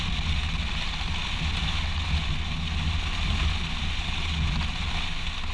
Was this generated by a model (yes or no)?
no